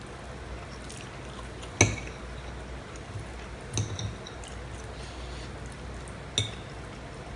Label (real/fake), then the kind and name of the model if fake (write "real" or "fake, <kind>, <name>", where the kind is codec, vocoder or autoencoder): real